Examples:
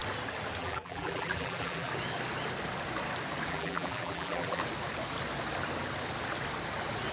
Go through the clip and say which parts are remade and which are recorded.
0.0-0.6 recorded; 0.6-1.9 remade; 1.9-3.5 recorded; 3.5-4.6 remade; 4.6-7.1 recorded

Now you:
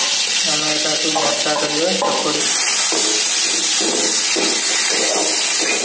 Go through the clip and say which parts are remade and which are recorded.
0.0-5.8 recorded

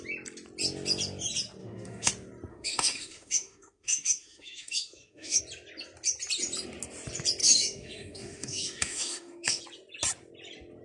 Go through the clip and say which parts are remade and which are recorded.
0.0-1.6 recorded; 1.6-2.1 remade; 2.1-2.5 recorded; 2.5-5.4 remade; 5.4-7.4 recorded; 7.4-9.6 remade; 9.6-10.8 recorded

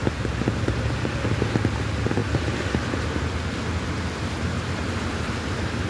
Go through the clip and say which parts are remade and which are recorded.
0.0-5.9 recorded

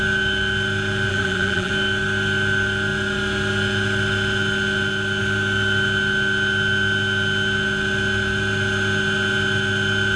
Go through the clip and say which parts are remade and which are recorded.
0.0-1.1 recorded; 1.1-1.7 remade; 1.7-10.2 recorded

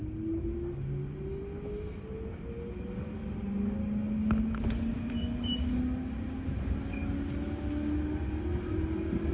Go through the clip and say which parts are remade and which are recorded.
0.0-9.3 recorded

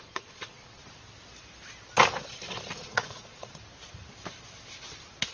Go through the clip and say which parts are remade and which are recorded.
0.0-0.8 remade; 0.8-2.8 recorded; 2.8-3.5 remade; 3.5-5.3 recorded

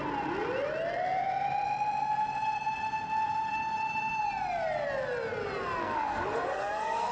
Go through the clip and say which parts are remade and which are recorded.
0.0-5.8 recorded; 5.8-7.1 remade